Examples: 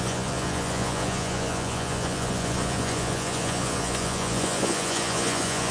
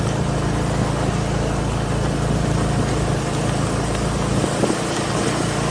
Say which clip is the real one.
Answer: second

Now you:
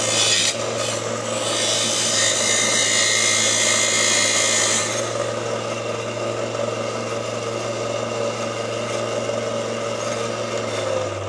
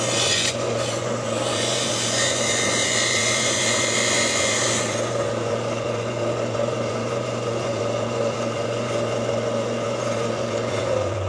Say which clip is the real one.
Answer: first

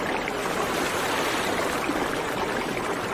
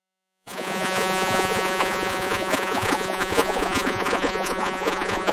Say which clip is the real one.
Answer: first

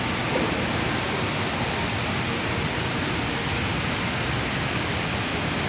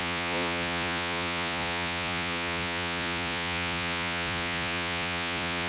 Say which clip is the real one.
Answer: first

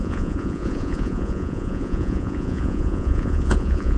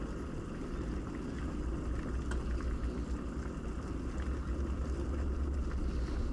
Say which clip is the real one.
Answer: second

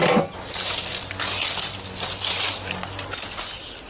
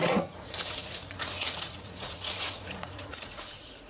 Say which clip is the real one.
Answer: first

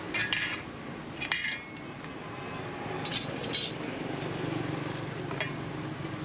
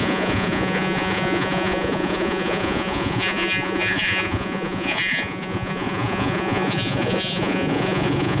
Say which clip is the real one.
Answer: first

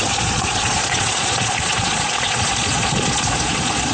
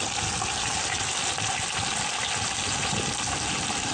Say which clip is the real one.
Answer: second